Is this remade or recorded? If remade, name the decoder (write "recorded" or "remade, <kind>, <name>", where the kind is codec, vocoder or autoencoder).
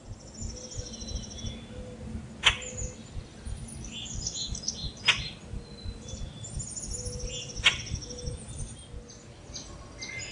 recorded